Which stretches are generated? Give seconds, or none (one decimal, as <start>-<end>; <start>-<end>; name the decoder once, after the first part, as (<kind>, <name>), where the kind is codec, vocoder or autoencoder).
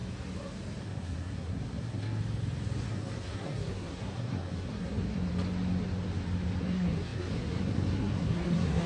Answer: 0.8-2.2 (codec, SNAC); 2.8-5.3; 6.6-8.9